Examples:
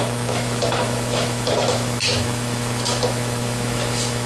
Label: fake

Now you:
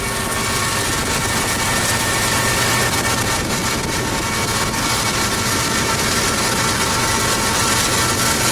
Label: real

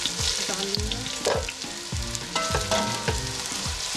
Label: real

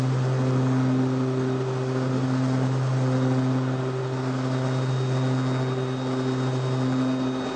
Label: real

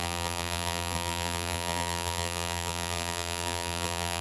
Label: fake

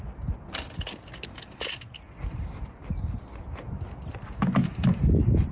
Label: real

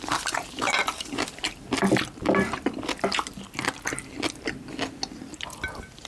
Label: real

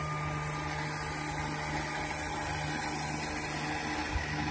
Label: real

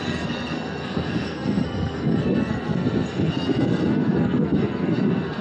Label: fake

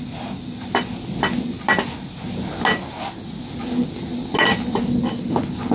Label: real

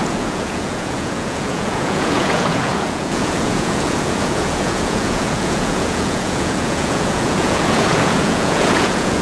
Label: fake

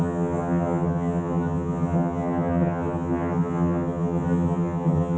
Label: fake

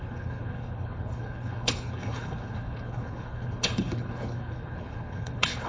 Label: fake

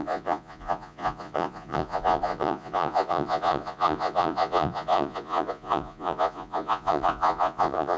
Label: fake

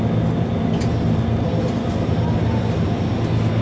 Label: real